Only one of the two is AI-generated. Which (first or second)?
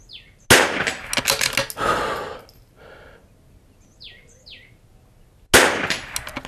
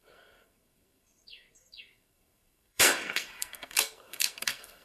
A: second